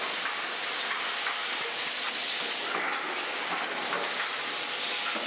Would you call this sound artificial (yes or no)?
no